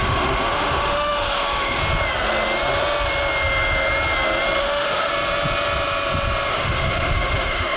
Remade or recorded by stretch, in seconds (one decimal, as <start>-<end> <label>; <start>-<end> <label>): 0.0-1.8 remade; 1.8-4.6 recorded; 4.6-5.1 remade; 5.1-6.5 recorded; 6.5-7.8 remade